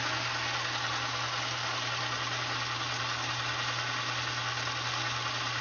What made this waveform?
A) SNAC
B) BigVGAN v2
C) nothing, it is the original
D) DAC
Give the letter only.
C